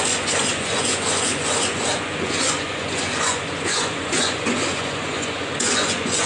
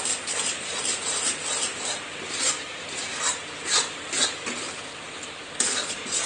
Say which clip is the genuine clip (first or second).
second